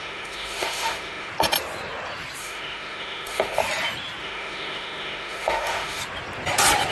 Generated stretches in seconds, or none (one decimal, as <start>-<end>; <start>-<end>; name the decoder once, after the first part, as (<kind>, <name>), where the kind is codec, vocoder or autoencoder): 0.0-1.3 (autoencoder, DAC-VAE); 2.4-3.6; 4.2-6.0